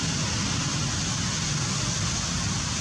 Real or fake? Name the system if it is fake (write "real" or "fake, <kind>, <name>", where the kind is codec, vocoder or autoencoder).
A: real